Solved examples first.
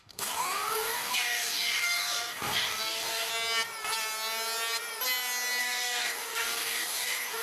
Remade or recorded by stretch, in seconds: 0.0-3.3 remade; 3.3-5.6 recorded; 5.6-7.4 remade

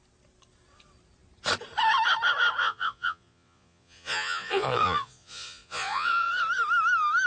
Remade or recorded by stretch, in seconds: 0.0-2.6 recorded; 2.6-6.3 remade; 6.3-7.3 recorded

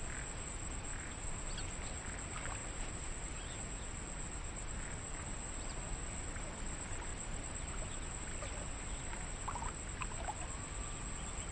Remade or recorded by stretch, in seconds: 0.0-0.9 recorded; 0.9-1.4 remade; 1.4-2.6 recorded; 2.6-3.6 remade; 3.6-7.1 recorded; 7.1-8.0 remade; 8.0-11.5 recorded

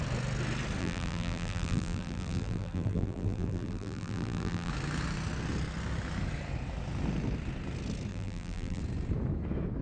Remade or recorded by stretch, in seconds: 0.0-0.8 recorded; 0.8-4.7 remade; 4.7-8.1 recorded; 8.1-8.8 remade; 8.8-9.8 recorded

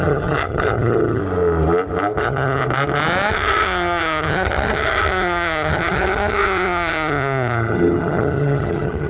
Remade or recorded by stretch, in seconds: 0.0-1.2 remade; 1.2-2.2 recorded; 2.2-2.6 remade; 2.6-3.3 recorded; 3.3-9.1 remade

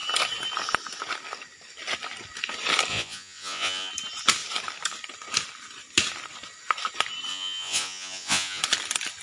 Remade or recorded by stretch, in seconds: 0.0-2.9 recorded; 2.9-3.9 remade; 3.9-7.3 recorded; 7.3-8.6 remade; 8.6-9.2 recorded

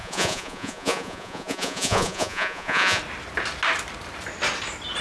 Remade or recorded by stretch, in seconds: 0.0-3.0 remade; 3.0-5.0 recorded

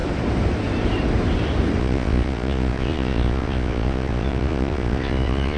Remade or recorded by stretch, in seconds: 0.0-1.8 recorded; 1.8-5.6 remade